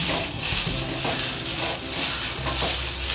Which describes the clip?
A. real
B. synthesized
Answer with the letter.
A